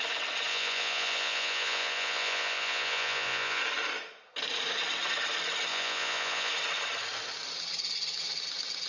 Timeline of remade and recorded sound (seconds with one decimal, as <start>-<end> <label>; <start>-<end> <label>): 0.0-0.5 recorded; 0.5-3.6 remade; 3.6-5.7 recorded; 5.7-6.5 remade; 6.5-8.9 recorded